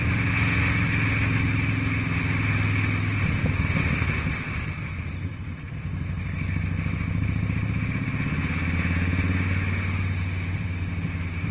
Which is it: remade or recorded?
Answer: recorded